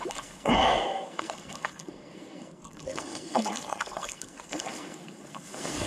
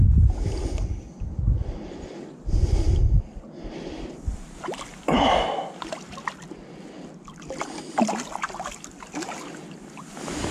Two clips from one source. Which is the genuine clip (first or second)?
second